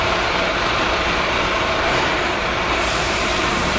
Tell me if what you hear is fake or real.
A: fake